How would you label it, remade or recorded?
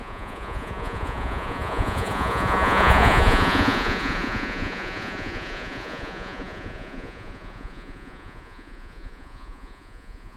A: remade